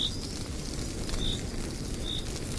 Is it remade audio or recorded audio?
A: recorded